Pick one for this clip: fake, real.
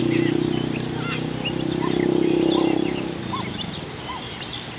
real